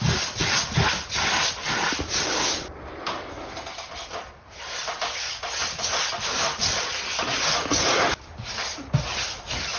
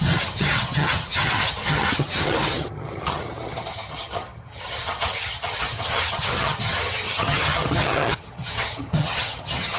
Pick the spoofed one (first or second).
second